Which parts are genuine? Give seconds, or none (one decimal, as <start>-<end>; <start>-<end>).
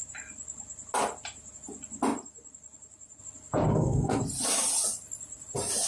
0.0-3.7; 4.2-5.9